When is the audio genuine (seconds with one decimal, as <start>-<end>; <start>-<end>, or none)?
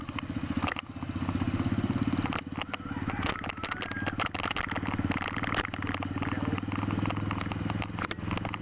0.0-8.6